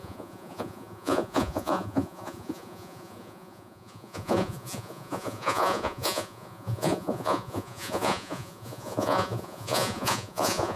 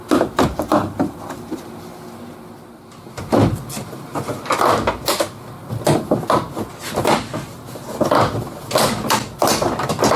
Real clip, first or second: second